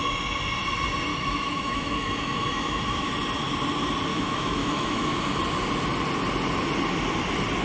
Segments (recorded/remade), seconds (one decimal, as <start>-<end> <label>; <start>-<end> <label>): 0.0-1.1 recorded; 1.1-3.1 remade; 3.1-4.1 recorded; 4.1-5.2 remade; 5.2-7.6 recorded